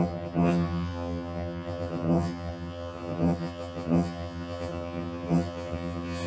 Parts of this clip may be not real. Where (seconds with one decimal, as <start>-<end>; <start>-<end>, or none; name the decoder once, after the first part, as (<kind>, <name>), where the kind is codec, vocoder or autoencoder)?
0.0-6.3 (vocoder, HiFi-GAN)